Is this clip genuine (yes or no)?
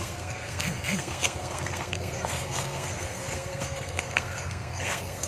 no